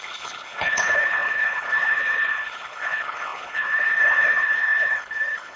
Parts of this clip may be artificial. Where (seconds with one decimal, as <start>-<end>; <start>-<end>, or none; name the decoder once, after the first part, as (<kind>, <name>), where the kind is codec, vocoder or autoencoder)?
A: 0.0-5.6 (codec, HILCodec)